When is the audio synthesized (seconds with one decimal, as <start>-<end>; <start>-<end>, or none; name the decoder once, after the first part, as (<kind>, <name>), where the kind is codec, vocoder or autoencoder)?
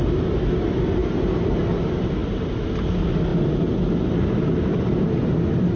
1.0-1.6 (vocoder, BigVGAN v2); 2.2-2.8